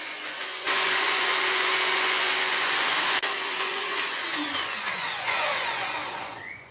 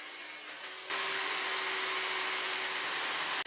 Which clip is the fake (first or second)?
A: first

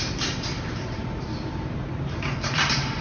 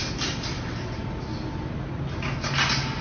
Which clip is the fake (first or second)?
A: first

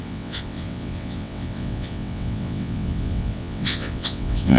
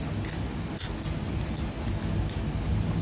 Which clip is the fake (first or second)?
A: first